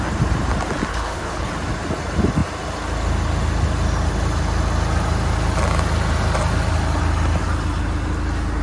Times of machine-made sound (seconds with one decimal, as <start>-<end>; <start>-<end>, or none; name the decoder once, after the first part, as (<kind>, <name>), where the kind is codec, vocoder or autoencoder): 0.9-1.5 (codec, HILCodec)